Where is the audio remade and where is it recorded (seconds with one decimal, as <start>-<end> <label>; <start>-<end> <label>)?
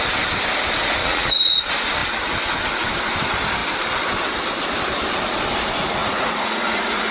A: 0.0-1.0 recorded; 1.0-1.6 remade; 1.6-6.0 recorded; 6.0-7.1 remade